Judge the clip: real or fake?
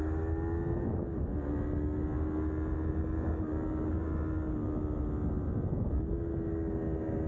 real